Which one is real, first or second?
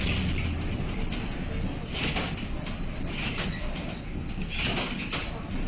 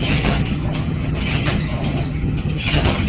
first